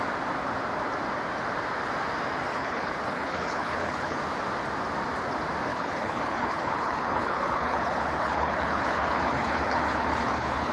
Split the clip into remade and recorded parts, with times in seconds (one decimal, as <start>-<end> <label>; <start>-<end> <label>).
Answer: 0.0-2.5 recorded; 2.5-4.2 remade; 4.2-5.7 recorded; 5.7-10.7 remade